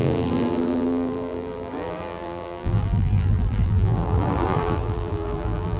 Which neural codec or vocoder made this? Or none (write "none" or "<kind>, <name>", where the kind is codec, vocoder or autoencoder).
vocoder, BigVGAN v2